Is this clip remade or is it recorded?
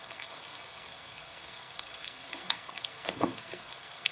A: remade